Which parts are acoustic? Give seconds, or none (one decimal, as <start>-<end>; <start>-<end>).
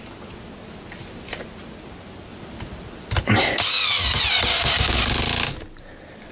0.0-4.5; 5.0-6.3